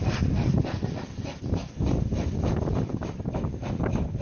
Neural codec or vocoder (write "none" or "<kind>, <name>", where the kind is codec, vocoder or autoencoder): none